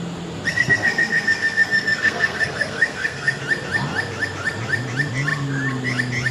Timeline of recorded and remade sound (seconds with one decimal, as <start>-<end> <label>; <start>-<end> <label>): 0.0-0.5 recorded; 0.5-3.4 remade; 3.4-6.3 recorded